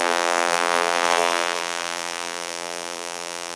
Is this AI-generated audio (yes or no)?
yes